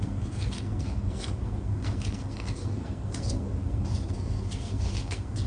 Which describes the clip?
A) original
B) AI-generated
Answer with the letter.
B